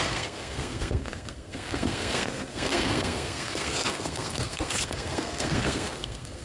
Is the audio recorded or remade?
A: remade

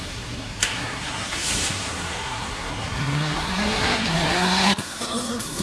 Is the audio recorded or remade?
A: remade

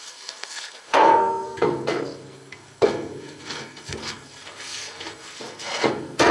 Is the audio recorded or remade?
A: remade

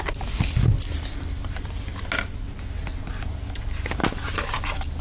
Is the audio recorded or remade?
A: recorded